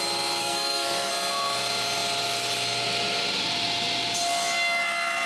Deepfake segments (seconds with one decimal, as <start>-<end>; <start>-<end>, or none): 0.4-1.1